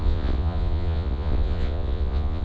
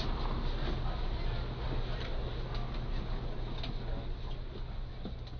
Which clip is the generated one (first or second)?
first